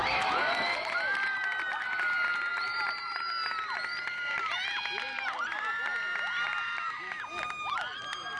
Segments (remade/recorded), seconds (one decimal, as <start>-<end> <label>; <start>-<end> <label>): 0.0-8.4 remade